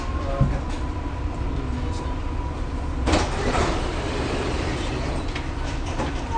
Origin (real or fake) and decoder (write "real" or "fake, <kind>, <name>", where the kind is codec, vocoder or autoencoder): real